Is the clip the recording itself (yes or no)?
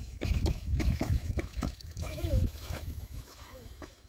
no